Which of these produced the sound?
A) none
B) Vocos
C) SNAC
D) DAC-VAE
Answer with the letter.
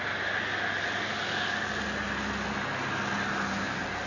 A